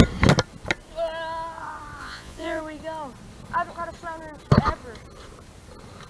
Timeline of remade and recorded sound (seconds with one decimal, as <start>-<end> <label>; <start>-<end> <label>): 0.0-2.0 recorded; 2.0-2.6 remade; 2.6-6.1 recorded